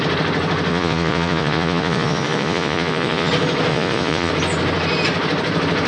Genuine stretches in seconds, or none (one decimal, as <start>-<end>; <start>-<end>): 0.0-0.7; 3.3-3.7; 4.3-5.9